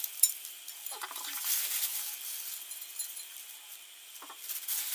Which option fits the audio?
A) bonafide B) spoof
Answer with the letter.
A